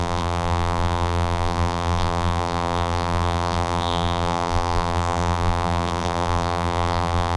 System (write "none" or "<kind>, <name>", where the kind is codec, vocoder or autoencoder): vocoder, BigVGAN v2